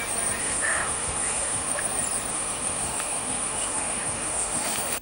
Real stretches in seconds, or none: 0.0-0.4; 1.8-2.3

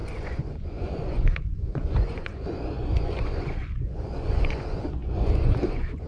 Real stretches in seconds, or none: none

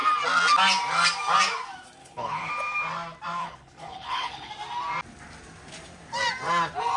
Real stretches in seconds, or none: 0.0-2.0; 2.5-3.4; 4.5-7.0